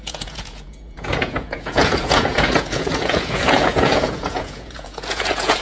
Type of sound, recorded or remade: remade